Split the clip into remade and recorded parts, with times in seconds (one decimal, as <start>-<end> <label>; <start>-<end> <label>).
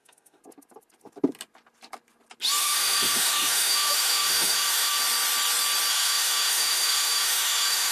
0.0-0.4 remade; 0.4-2.6 recorded; 2.6-5.0 remade; 5.0-5.9 recorded; 5.9-7.9 remade